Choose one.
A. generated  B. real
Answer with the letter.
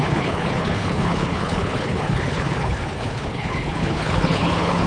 A